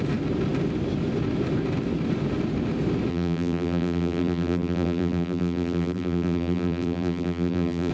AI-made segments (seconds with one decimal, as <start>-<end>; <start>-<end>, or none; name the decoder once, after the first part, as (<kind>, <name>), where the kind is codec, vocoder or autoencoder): 3.1-7.9 (vocoder, BigVGAN v2)